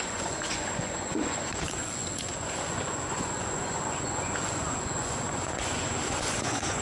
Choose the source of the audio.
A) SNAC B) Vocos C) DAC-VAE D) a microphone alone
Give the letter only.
B